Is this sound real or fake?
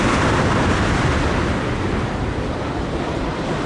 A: fake